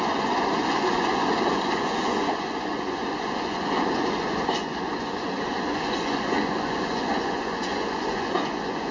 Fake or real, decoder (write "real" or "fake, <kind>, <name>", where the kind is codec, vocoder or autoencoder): fake, vocoder, Vocos